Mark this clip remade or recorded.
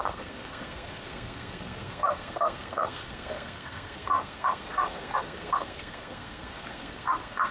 remade